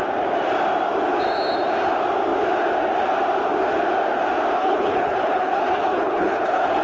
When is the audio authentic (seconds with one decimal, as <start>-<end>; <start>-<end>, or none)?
0.0-4.6

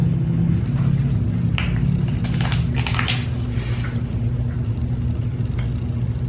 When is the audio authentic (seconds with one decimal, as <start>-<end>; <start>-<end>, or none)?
0.6-6.3

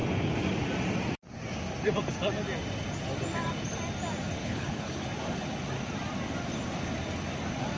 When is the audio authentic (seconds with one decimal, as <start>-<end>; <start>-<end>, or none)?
0.0-4.4; 5.0-7.8

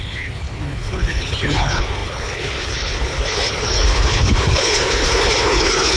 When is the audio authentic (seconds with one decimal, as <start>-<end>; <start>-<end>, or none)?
none

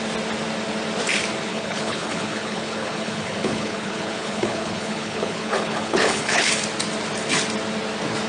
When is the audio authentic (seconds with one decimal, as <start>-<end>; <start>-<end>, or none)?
0.0-1.5; 6.5-8.3

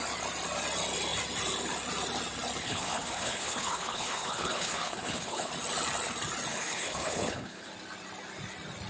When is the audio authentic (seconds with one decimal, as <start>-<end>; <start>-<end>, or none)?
0.0-2.6; 5.5-6.5; 7.7-8.9

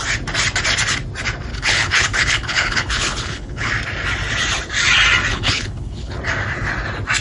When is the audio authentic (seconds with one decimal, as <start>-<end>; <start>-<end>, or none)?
0.0-1.5; 3.7-5.3; 6.2-7.2